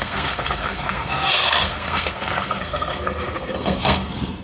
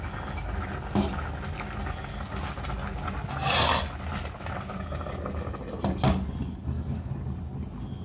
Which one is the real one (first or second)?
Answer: second